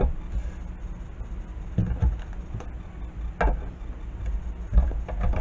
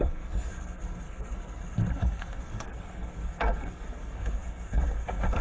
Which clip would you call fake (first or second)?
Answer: second